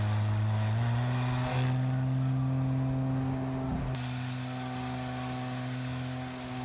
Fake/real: real